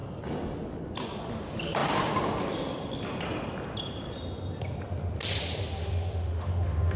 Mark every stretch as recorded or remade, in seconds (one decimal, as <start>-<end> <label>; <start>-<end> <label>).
0.0-5.8 recorded; 5.8-7.0 remade